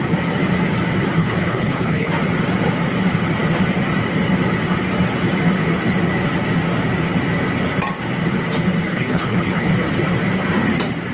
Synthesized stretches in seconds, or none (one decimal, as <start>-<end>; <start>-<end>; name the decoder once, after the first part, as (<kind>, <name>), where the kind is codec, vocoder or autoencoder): 1.2-2.1 (codec, HILCodec); 8.9-9.7